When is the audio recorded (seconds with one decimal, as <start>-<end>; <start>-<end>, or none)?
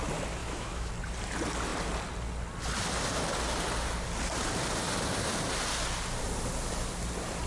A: 0.0-0.4; 0.9-7.5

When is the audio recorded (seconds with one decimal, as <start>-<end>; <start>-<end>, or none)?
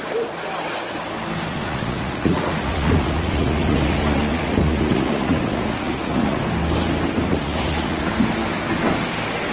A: 0.0-1.5; 6.4-7.3; 8.1-9.5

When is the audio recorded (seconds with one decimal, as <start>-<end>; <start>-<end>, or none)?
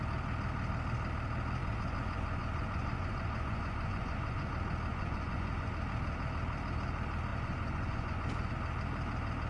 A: 0.0-1.6; 4.5-4.9; 5.7-7.3; 8.5-9.5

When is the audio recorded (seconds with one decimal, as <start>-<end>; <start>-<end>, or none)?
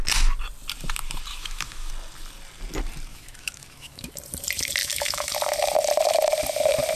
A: 0.0-1.3; 1.9-3.1; 4.2-4.8; 5.3-7.0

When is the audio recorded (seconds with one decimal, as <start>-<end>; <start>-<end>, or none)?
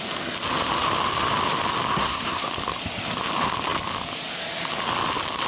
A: 0.0-1.9; 2.5-5.5